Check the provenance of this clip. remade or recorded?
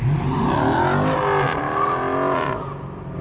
recorded